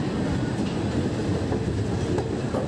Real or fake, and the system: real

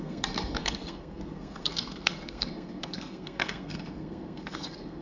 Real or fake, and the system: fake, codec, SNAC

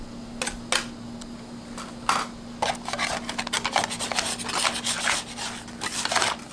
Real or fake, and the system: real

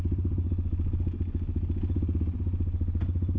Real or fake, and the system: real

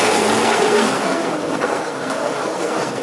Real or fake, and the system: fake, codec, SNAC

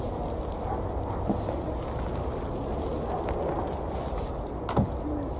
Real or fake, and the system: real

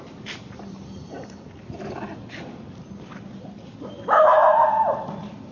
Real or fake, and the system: real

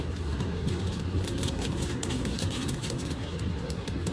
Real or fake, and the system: fake, codec, SNAC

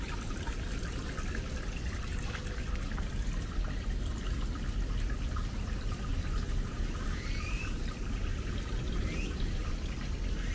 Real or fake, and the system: real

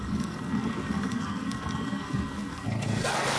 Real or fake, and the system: fake, codec, SNAC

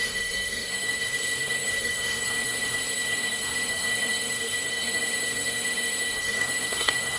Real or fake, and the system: fake, codec, SNAC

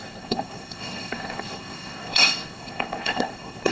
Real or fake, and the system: fake, codec, SNAC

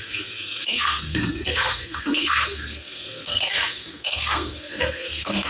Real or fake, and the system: fake, codec, SNAC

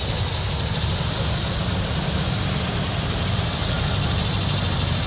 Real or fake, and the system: real